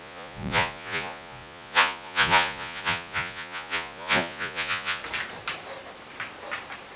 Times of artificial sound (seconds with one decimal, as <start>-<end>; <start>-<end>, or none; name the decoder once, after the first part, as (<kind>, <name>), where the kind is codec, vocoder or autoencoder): 0.0-5.0 (vocoder, Vocos)

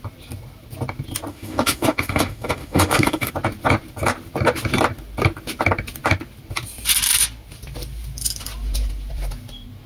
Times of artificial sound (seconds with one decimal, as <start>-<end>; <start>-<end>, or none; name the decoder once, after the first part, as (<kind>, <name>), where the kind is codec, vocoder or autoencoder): 1.3-3.3 (autoencoder, DAC-VAE)

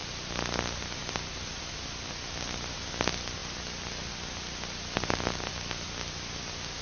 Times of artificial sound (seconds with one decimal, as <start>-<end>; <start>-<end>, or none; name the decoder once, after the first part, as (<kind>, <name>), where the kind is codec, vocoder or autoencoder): none

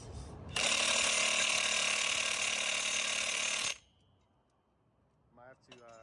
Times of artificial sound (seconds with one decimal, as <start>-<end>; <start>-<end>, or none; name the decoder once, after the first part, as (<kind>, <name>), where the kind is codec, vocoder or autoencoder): none

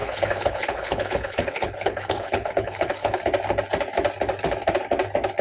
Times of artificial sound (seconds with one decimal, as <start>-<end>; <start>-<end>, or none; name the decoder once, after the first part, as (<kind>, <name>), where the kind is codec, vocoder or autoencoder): 0.0-3.2 (codec, HILCodec)

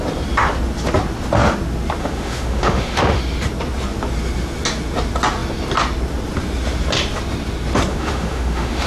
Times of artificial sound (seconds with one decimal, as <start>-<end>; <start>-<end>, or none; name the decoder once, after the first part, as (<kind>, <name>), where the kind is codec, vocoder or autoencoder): 2.0-3.2 (autoencoder, DAC-VAE); 7.9-8.9